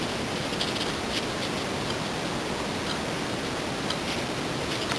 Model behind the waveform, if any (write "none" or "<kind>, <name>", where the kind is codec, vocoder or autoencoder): none